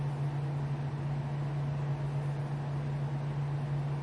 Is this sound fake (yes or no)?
no